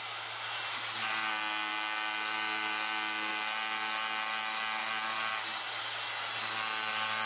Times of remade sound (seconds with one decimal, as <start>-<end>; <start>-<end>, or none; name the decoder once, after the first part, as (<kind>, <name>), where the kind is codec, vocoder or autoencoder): none